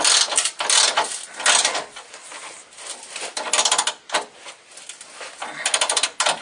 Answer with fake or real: real